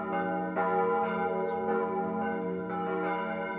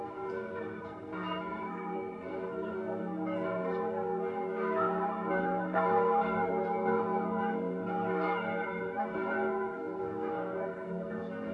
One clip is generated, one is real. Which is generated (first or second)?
second